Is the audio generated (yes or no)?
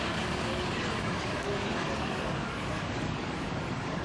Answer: yes